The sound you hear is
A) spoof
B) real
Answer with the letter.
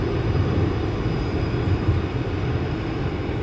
B